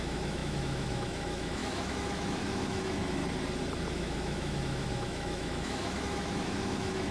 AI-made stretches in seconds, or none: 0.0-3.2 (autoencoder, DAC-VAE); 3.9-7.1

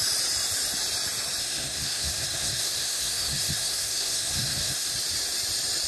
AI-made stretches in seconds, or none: 1.4-4.9 (codec, SNAC)

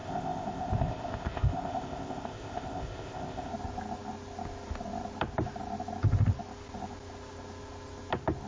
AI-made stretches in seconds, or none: 0.0-3.5 (codec, ZipCodec)

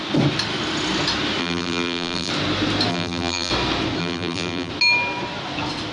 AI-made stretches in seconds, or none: 1.4-2.3 (vocoder, BigVGAN v2); 2.9-3.5; 4.0-4.7

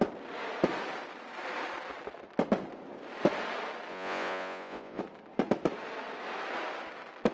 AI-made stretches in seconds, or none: 3.9-5.0 (vocoder, Vocos)

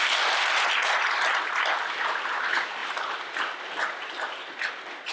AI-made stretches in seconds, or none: none

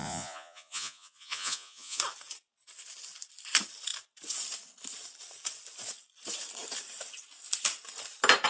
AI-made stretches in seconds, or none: 0.0-2.0 (vocoder, Vocos)